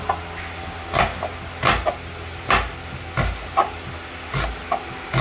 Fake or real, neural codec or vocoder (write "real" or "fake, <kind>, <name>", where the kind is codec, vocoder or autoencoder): real